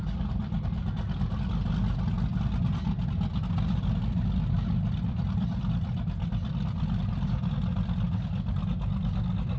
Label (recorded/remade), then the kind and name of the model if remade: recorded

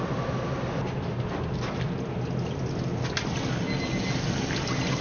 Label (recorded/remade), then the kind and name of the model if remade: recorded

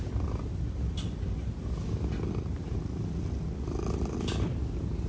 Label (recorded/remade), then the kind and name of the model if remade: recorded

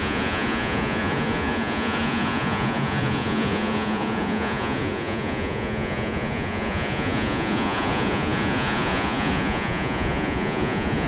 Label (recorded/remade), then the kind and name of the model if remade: remade, vocoder, Vocos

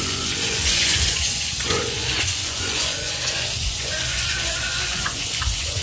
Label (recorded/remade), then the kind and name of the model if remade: remade, vocoder, Vocos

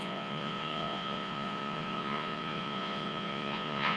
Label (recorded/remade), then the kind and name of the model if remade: remade, vocoder, Vocos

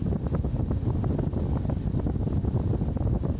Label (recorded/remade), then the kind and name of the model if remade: recorded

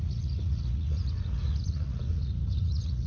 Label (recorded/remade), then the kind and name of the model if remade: remade, vocoder, Vocos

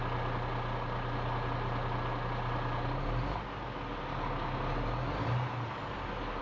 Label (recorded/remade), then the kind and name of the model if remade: recorded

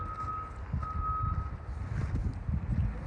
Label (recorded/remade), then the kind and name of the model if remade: recorded